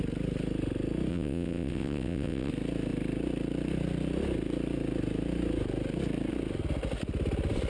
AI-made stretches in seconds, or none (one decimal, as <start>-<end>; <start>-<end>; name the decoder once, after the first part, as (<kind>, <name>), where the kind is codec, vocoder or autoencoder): 1.1-2.5 (vocoder, WaveNeXt)